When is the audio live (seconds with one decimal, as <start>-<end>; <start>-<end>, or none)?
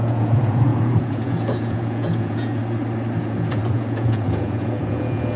2.6-3.2